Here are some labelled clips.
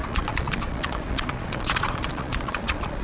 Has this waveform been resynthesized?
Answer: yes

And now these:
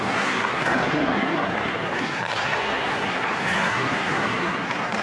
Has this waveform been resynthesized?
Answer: yes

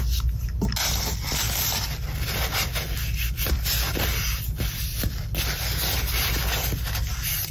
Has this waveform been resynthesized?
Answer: no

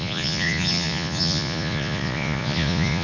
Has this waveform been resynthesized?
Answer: yes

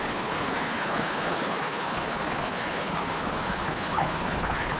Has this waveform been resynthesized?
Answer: yes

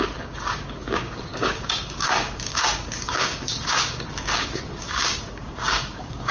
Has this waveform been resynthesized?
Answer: yes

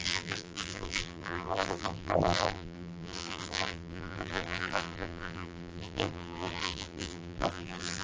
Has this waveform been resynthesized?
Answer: yes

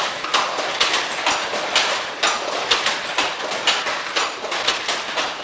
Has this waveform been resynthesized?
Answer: no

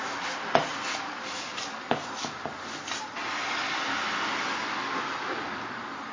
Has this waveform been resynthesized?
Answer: yes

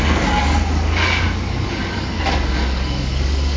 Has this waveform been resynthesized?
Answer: yes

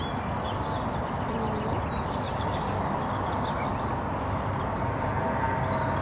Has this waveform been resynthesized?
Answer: no